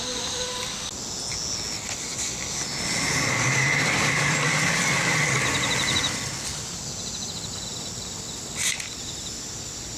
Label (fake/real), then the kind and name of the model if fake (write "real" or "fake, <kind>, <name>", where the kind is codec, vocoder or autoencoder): real